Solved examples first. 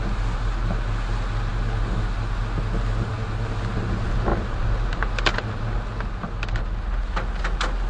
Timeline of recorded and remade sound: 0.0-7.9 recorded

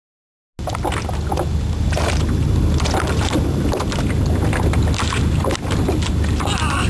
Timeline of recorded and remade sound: 0.0-6.9 recorded

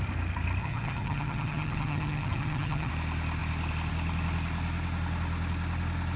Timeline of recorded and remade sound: 0.0-0.6 recorded; 0.6-2.9 remade; 2.9-6.2 recorded

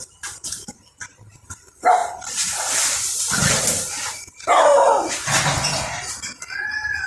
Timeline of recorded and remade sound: 0.0-2.0 recorded; 2.0-2.8 remade; 2.8-7.1 recorded